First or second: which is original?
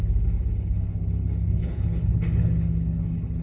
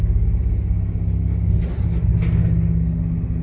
second